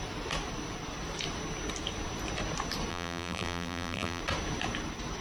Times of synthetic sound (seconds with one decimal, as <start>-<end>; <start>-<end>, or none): 2.9-4.2